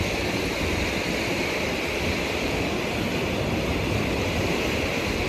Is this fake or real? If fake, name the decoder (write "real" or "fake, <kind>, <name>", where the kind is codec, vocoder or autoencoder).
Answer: real